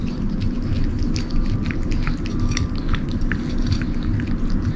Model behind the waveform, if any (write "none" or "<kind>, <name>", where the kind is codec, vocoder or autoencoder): none